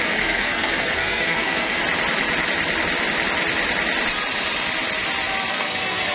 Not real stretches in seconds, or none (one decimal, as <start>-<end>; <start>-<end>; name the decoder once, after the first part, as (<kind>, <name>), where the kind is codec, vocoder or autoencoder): 0.0-1.8 (codec, SNAC); 5.5-6.1